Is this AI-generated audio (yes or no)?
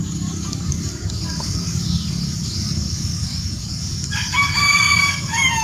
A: yes